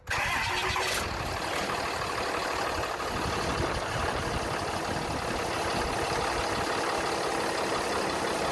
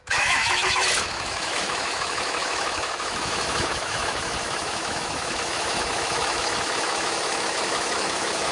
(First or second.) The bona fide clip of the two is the first